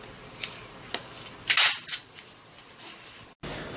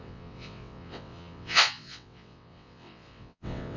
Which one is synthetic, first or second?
second